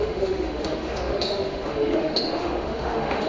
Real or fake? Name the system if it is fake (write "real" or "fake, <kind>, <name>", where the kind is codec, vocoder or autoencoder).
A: fake, autoencoder, DAC-VAE